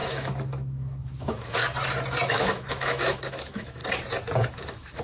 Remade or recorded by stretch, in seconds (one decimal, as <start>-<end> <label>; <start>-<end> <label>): 0.0-1.6 remade; 1.6-2.3 recorded; 2.3-3.8 remade; 3.8-4.5 recorded; 4.5-5.0 remade